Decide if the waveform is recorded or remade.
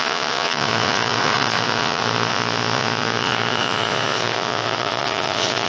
remade